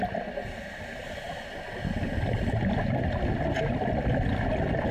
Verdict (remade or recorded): recorded